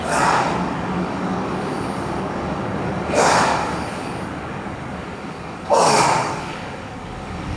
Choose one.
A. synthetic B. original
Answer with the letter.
A